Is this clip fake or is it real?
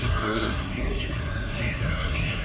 fake